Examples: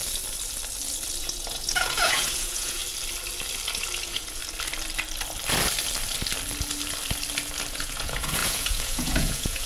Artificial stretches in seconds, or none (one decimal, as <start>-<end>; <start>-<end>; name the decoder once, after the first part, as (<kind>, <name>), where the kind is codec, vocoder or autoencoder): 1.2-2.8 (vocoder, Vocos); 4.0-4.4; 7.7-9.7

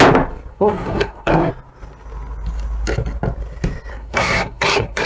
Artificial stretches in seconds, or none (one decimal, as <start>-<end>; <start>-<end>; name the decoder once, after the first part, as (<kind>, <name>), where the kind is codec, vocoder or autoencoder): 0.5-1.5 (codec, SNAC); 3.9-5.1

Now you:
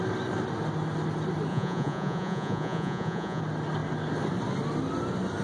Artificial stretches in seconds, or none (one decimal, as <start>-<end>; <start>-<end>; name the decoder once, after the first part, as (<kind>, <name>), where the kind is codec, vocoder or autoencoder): 1.5-3.4 (vocoder, Vocos)

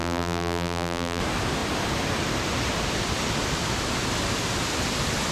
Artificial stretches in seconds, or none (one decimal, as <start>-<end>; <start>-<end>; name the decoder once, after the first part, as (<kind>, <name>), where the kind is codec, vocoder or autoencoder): 0.0-1.2 (vocoder, BigVGAN v2)

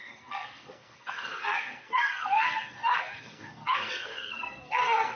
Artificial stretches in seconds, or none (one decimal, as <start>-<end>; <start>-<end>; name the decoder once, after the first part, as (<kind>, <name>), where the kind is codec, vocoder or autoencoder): 0.0-5.2 (codec, SNAC)

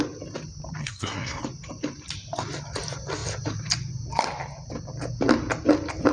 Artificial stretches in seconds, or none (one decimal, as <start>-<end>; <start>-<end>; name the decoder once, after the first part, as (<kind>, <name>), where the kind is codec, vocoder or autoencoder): 0.8-1.4 (codec, SNAC)